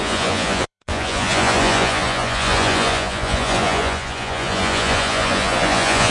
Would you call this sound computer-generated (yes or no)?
yes